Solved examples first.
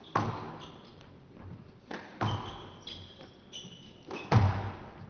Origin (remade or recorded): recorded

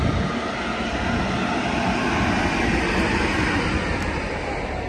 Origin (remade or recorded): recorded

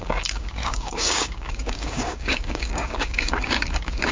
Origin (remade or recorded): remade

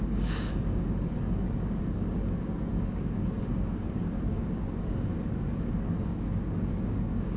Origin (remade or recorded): remade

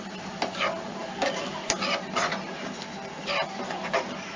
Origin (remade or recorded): recorded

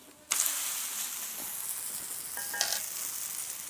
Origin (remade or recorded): recorded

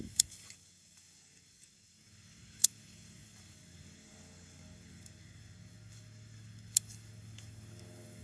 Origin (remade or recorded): remade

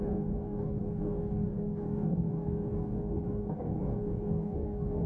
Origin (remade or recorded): remade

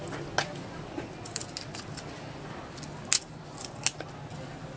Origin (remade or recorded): recorded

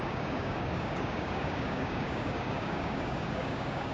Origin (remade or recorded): remade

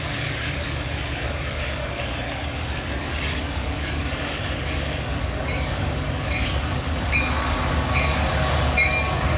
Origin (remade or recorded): remade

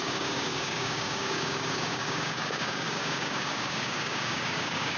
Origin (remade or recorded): remade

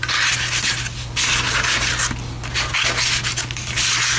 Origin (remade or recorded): recorded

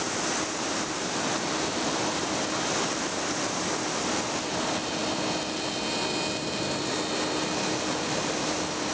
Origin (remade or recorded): recorded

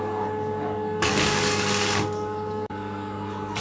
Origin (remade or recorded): remade